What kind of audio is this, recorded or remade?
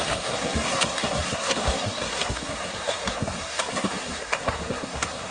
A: remade